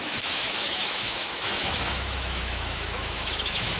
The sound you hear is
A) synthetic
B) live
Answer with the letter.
A